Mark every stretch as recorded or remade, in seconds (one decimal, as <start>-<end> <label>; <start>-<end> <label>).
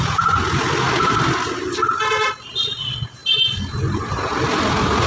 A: 0.0-3.2 recorded; 3.2-4.1 remade; 4.1-5.1 recorded